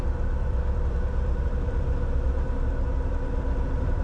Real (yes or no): no